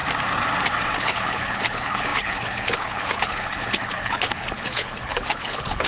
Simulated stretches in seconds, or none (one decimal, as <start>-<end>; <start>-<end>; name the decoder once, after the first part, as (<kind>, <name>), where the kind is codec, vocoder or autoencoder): 1.0-5.9 (codec, HILCodec)